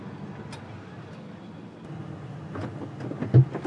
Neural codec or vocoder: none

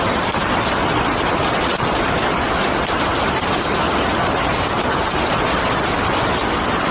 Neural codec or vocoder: vocoder, BigVGAN v2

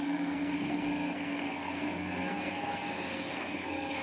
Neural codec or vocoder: codec, SNAC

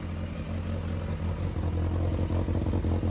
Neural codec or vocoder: none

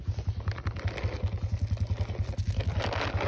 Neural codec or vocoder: none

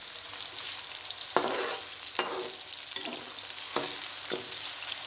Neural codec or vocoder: none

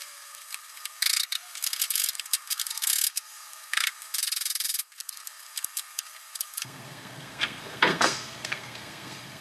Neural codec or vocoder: codec, SNAC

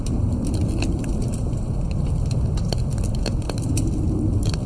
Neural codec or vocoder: none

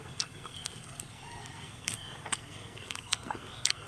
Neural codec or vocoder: codec, SNAC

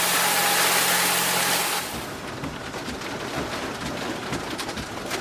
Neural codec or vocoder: none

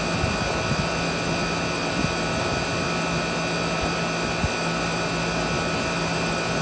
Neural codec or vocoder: none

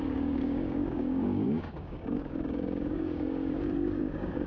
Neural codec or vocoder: codec, DAC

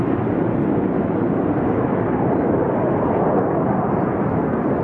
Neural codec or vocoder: none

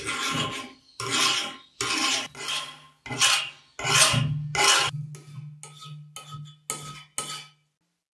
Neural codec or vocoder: none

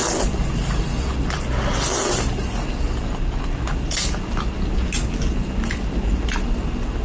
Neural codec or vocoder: none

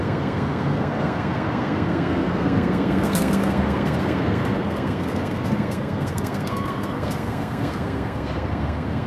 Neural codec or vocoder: codec, SNAC